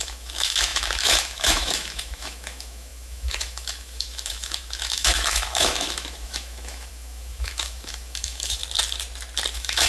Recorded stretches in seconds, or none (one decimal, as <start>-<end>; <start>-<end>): 8.6-9.5